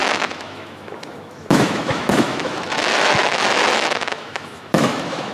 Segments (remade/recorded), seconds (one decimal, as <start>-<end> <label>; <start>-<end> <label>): 0.0-5.3 remade